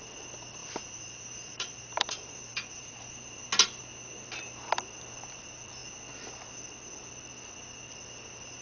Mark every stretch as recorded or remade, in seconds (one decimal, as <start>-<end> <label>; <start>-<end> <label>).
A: 0.0-0.6 recorded; 0.6-3.5 remade; 3.5-8.6 recorded